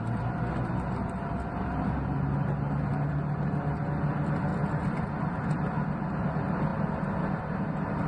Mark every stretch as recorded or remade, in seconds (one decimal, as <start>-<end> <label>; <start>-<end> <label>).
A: 0.0-8.1 recorded